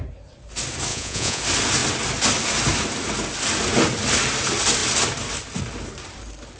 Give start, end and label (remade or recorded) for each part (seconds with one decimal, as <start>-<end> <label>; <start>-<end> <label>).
0.0-0.9 recorded; 0.9-1.4 remade; 1.4-6.6 recorded